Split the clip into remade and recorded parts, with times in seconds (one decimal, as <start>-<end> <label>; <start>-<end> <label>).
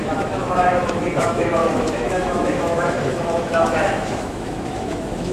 0.0-5.3 remade